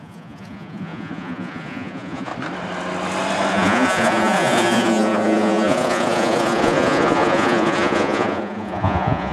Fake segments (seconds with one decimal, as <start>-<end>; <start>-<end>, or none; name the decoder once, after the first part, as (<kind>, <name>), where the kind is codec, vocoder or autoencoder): 0.0-2.3 (vocoder, Vocos); 3.5-9.3